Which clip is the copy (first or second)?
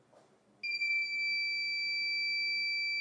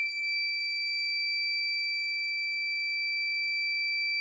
second